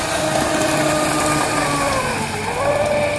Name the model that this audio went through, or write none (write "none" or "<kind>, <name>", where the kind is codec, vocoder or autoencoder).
none